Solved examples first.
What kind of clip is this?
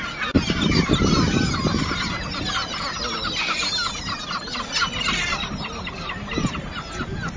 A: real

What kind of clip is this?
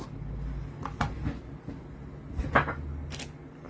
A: real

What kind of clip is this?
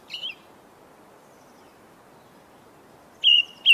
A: real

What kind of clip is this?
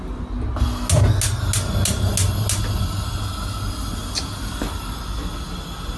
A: real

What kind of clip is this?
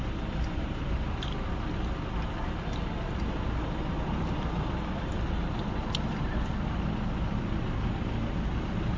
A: real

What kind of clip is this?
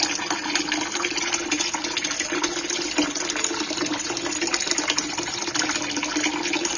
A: real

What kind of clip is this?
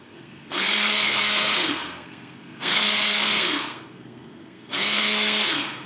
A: fake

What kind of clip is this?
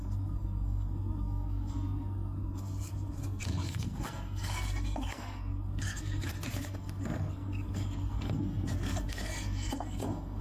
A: fake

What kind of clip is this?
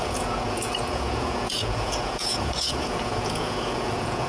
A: fake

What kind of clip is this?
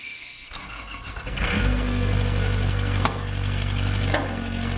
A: fake